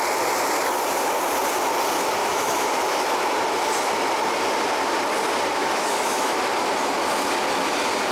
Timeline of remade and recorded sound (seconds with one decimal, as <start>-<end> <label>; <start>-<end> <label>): 0.0-2.2 recorded; 2.2-3.0 remade; 3.0-5.6 recorded; 5.6-6.4 remade; 6.4-8.1 recorded